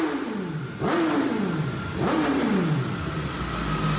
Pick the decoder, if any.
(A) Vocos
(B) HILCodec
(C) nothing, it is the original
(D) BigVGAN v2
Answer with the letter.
C